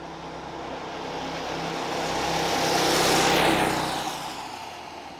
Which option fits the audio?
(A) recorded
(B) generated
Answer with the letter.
A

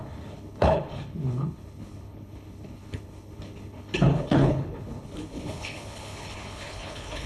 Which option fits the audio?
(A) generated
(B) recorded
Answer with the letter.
A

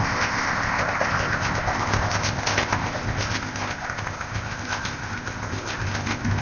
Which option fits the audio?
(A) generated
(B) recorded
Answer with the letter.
A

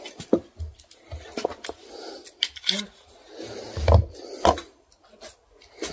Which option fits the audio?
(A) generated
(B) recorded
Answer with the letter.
B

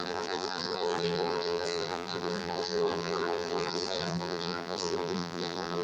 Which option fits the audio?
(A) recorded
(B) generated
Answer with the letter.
B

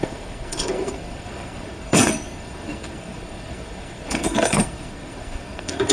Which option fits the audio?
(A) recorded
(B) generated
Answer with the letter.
B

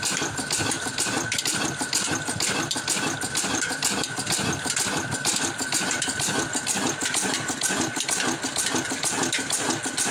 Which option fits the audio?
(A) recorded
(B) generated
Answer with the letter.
B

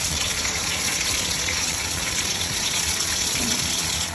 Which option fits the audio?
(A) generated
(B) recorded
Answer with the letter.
A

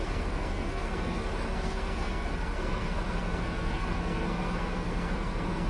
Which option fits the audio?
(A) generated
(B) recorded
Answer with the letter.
A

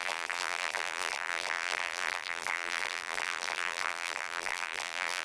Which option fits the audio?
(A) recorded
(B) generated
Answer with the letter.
B